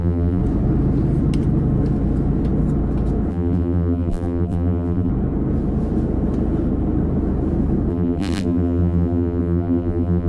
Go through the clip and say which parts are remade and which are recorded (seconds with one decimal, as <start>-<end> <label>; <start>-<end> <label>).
0.0-0.4 remade; 0.4-3.3 recorded; 3.3-5.1 remade; 5.1-7.9 recorded; 7.9-10.3 remade